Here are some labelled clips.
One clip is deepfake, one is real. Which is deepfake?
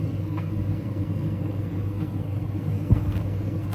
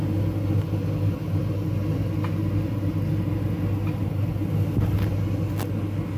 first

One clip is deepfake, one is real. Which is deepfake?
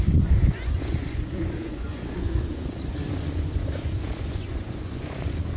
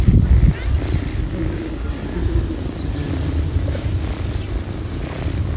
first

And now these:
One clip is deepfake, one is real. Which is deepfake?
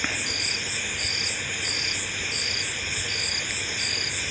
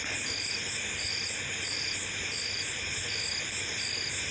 second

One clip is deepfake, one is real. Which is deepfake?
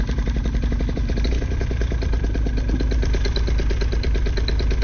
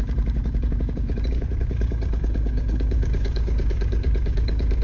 second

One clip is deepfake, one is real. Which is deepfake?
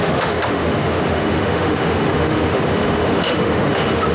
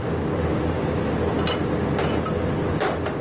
first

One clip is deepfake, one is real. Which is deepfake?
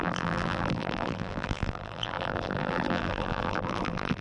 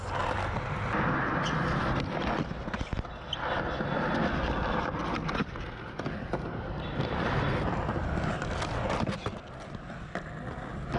first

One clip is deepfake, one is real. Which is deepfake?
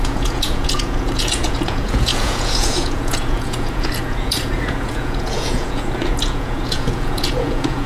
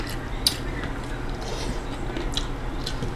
first